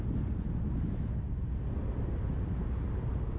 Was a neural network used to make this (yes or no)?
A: no